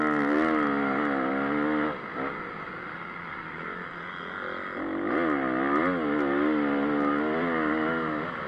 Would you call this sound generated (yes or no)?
no